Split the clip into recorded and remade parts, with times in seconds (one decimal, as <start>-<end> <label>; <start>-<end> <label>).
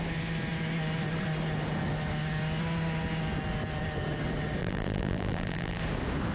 0.0-4.6 recorded; 4.6-5.8 remade; 5.8-6.3 recorded